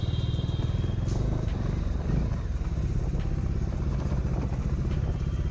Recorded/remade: recorded